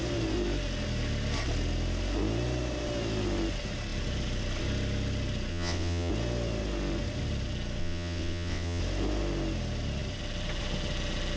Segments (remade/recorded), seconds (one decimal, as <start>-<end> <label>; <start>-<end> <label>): 0.0-5.5 recorded; 5.5-6.1 remade; 6.1-7.8 recorded; 7.8-8.8 remade; 8.8-11.4 recorded